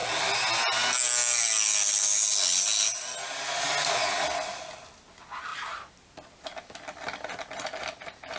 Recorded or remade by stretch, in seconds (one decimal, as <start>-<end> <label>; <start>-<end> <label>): 0.0-8.4 recorded